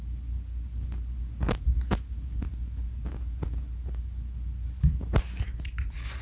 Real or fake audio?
real